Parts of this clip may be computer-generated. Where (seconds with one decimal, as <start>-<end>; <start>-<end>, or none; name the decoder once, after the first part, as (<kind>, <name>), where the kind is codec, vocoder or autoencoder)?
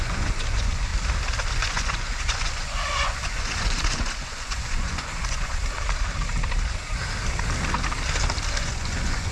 0.0-0.9 (vocoder, Vocos); 1.5-5.6; 8.5-9.3